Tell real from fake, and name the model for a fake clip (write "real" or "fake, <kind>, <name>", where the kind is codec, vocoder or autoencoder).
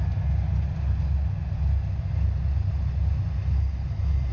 real